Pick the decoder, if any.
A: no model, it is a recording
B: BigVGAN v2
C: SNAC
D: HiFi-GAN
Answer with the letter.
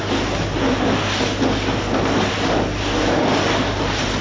A